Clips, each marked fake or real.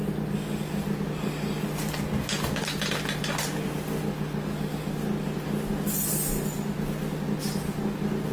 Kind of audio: real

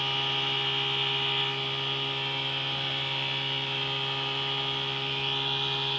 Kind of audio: real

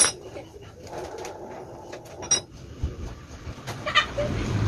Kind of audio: real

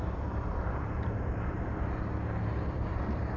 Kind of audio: fake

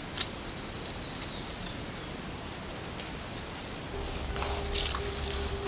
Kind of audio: real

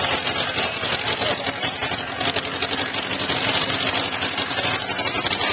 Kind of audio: real